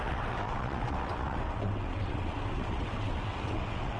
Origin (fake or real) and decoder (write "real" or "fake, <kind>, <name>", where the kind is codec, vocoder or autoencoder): fake, vocoder, WaveNeXt